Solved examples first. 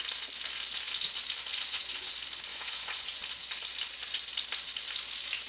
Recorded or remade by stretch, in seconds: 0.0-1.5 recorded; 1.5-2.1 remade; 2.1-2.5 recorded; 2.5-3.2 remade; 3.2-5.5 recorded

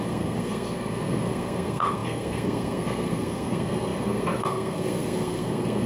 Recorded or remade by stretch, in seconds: 0.0-5.9 remade